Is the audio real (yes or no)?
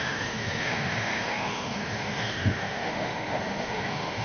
no